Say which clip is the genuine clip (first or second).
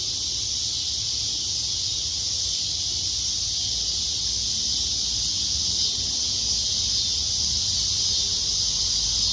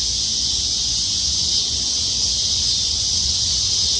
first